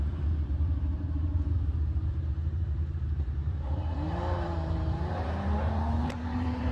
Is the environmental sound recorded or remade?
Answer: remade